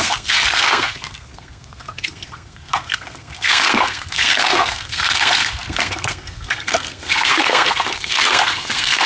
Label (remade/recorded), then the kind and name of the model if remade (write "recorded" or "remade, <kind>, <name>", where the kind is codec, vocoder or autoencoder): remade, codec, SNAC